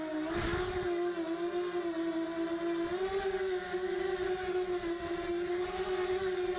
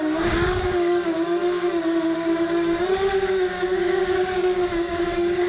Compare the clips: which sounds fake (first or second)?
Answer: second